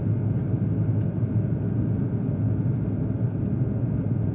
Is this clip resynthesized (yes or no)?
no